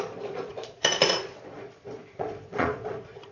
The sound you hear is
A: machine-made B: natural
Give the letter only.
A